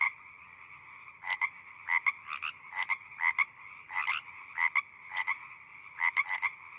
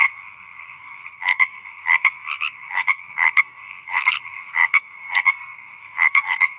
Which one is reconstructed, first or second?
second